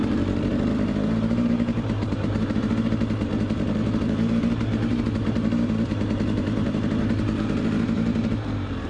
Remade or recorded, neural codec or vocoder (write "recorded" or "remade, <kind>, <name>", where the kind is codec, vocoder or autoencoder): remade, vocoder, BigVGAN v2